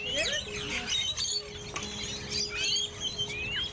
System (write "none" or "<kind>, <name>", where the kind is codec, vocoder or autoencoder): none